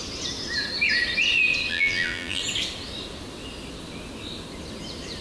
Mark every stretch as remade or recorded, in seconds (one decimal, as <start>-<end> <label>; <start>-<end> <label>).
0.0-1.7 recorded; 1.7-2.4 remade; 2.4-5.2 recorded